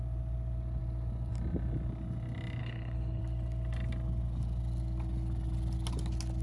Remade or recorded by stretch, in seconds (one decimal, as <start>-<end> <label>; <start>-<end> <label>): 0.0-2.6 recorded; 2.6-3.2 remade; 3.2-6.4 recorded